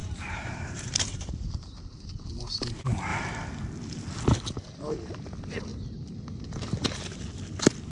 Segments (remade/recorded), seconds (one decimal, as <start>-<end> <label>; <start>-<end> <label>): 0.0-2.7 remade; 2.7-5.7 recorded; 5.7-7.2 remade; 7.2-7.9 recorded